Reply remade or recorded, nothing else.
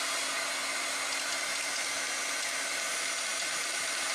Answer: recorded